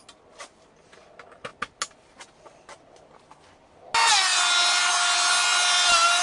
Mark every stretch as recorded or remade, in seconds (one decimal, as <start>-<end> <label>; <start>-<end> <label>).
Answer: 0.0-6.2 recorded